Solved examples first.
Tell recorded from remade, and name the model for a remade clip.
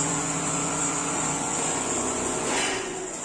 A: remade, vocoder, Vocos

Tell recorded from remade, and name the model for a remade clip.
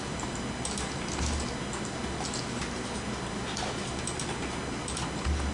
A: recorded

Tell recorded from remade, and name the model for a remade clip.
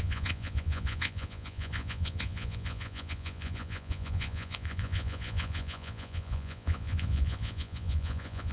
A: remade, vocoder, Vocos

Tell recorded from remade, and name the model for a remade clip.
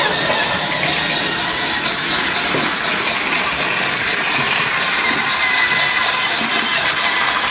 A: recorded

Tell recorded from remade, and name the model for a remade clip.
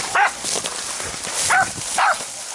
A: remade, vocoder, BigVGAN v2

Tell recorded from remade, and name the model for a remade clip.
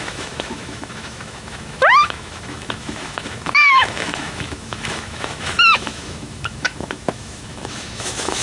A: remade, autoencoder, DAC-VAE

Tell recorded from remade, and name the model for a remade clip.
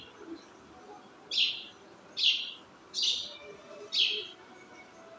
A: recorded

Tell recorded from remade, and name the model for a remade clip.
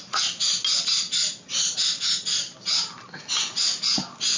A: recorded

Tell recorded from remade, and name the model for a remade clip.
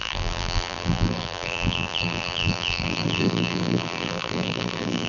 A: remade, vocoder, BigVGAN v2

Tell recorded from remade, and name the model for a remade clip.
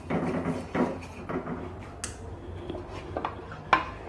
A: recorded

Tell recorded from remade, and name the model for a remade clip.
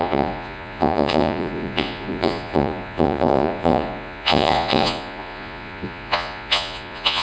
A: remade, vocoder, Vocos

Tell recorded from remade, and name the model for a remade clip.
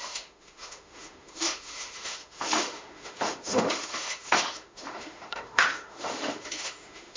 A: remade, autoencoder, DAC-VAE